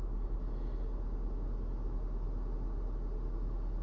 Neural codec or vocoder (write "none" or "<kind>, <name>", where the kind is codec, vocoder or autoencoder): none